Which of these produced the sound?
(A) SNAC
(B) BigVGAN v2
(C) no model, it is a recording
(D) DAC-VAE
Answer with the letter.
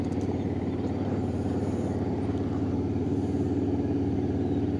B